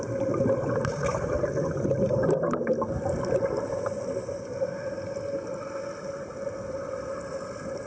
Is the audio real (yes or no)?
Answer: yes